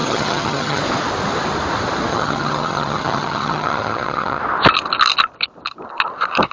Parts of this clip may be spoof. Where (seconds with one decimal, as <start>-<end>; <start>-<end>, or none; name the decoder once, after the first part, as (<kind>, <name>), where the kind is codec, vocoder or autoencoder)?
0.0-0.8 (vocoder, HiFi-GAN); 2.1-4.4